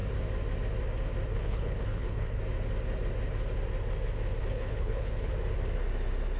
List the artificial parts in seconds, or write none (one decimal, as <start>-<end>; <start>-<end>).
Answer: 1.3-2.4; 4.4-5.3